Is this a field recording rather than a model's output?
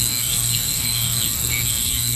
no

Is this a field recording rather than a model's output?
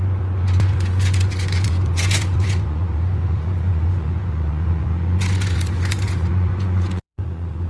no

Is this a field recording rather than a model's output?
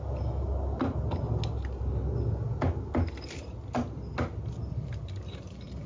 yes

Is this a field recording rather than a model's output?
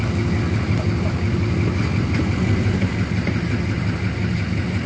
yes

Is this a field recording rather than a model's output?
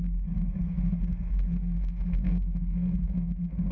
no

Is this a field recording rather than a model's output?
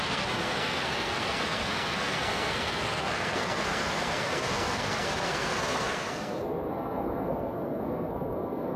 no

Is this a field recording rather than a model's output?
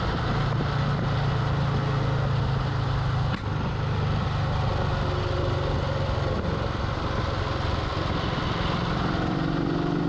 yes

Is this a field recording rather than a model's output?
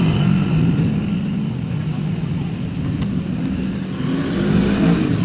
yes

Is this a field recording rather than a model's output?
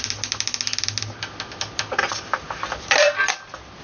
yes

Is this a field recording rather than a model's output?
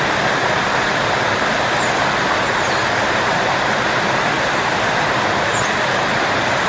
yes